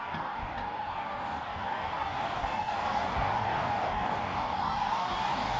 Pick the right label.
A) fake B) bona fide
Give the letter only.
A